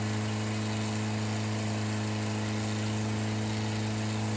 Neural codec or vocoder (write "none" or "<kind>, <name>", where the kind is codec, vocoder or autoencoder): none